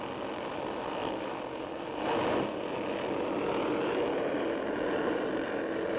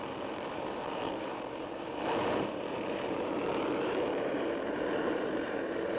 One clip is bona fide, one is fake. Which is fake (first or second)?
second